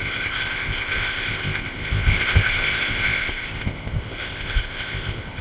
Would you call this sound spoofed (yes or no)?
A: yes